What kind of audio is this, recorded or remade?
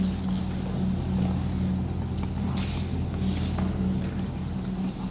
recorded